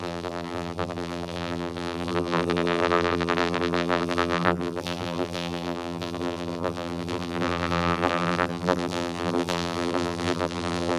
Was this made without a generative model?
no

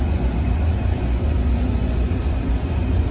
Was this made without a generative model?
no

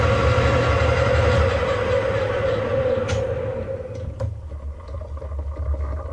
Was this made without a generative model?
yes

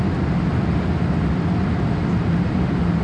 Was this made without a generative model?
yes